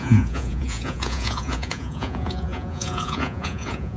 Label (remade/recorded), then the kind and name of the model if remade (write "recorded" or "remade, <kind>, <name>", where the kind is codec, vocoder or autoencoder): remade, vocoder, Vocos